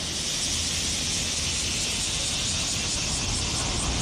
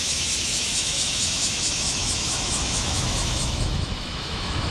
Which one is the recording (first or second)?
first